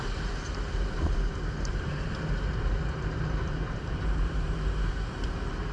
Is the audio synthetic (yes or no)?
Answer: yes